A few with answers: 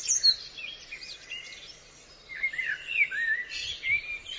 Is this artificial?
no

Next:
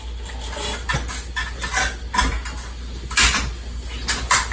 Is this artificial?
no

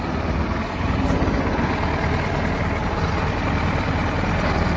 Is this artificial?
no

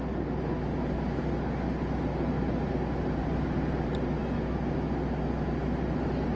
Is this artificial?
no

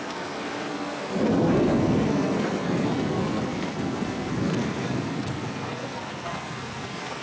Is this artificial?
yes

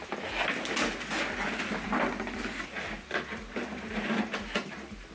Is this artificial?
no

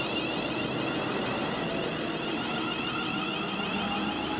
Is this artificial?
no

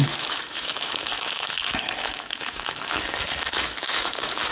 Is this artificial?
yes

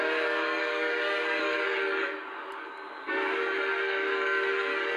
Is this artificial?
yes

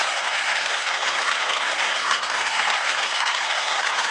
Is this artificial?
yes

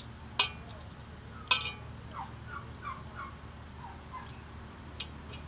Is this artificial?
no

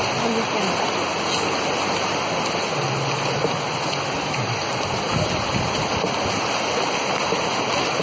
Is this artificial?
no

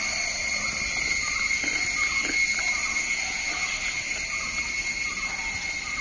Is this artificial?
no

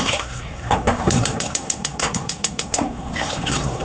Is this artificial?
yes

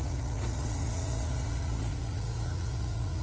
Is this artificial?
yes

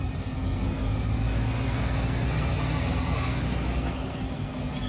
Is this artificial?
yes